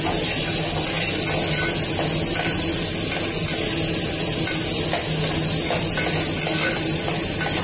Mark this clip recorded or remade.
recorded